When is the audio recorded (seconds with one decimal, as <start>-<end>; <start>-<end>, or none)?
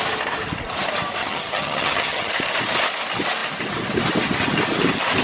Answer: 0.0-1.2; 2.3-5.2